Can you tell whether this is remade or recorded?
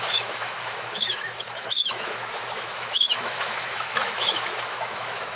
remade